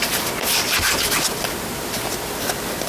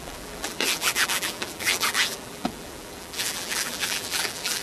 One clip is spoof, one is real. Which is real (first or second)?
first